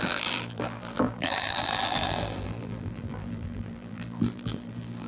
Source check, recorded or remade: remade